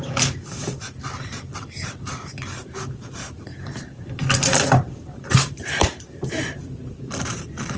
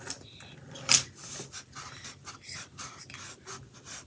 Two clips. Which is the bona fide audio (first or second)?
second